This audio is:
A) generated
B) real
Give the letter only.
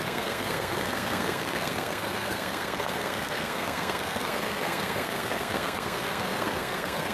A